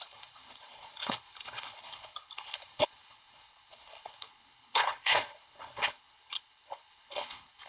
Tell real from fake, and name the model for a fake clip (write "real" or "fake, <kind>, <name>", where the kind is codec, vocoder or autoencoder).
fake, codec, HILCodec